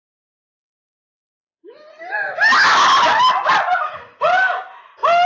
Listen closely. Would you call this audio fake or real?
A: real